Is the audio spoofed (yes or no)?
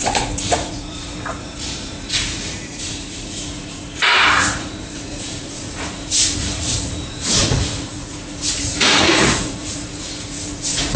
yes